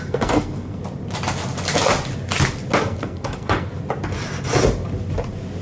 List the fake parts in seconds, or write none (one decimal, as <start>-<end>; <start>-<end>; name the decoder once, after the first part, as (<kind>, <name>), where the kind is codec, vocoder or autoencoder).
0.0-0.8 (codec, SNAC); 2.8-3.7